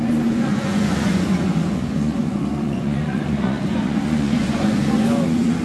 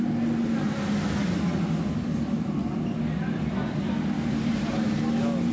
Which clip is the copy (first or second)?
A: first